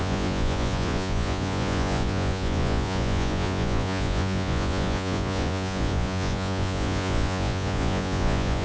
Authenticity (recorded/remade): remade